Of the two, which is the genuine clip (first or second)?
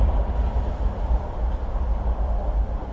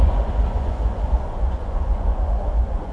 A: first